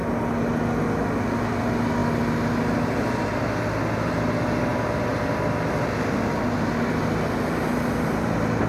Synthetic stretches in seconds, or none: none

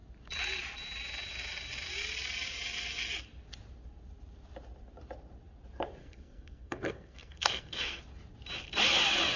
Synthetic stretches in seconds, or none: 6.0-8.0

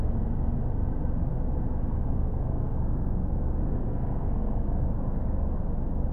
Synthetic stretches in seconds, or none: 2.1-4.9

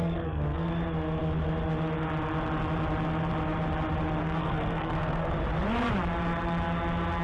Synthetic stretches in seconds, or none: 0.0-0.7; 4.2-5.3